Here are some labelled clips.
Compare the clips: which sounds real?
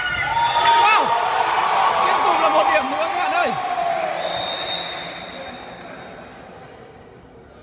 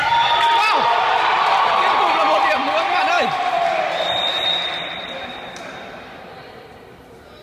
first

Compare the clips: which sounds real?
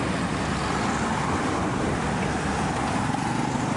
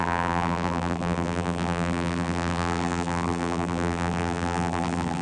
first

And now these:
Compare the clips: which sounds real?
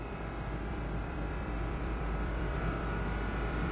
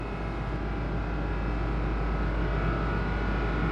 second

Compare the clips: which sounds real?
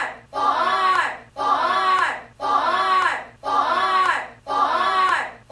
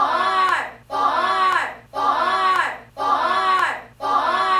second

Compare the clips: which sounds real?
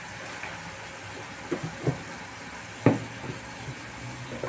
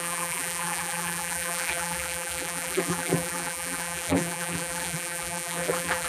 first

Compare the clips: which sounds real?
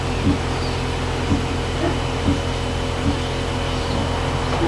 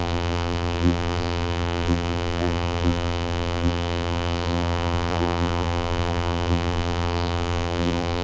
first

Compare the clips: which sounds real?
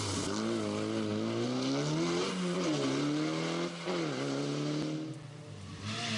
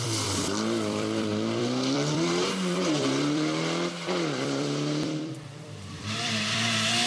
first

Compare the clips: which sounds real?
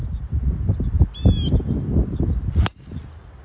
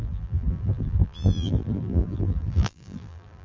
first